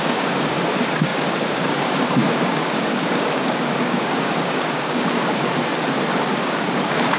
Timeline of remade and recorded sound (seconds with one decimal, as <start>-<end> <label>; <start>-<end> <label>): 0.0-5.7 remade; 5.7-6.4 recorded; 6.4-7.2 remade